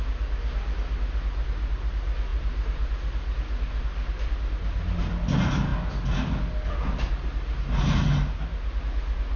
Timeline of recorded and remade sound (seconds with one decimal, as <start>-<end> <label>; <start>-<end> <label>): 0.0-9.4 recorded